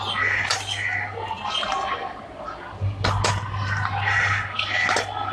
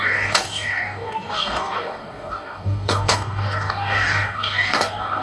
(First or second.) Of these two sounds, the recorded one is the first